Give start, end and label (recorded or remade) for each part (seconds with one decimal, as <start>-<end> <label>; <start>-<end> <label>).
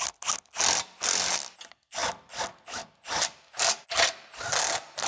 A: 0.0-5.1 recorded